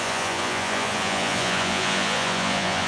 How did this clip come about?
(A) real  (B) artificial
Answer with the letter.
B